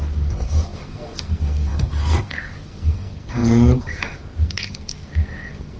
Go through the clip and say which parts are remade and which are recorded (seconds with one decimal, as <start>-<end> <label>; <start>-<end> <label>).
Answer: 0.0-5.8 remade